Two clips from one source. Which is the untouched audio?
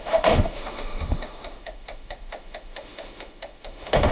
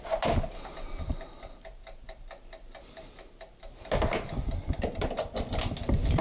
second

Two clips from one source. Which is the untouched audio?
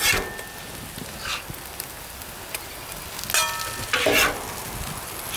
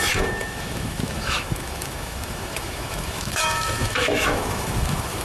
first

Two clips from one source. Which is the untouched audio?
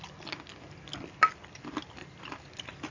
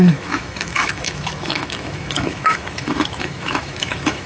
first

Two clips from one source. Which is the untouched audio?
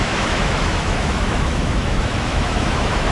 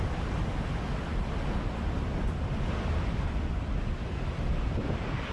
second